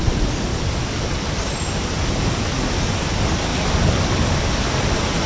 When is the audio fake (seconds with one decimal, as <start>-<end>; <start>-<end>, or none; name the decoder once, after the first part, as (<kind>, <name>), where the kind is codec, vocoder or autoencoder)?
none